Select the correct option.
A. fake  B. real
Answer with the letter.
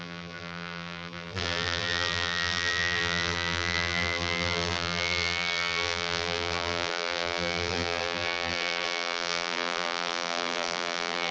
A